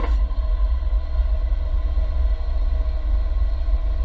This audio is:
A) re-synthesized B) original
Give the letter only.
B